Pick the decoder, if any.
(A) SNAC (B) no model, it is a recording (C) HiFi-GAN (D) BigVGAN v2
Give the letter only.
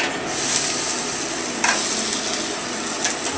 B